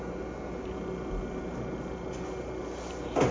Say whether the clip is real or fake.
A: real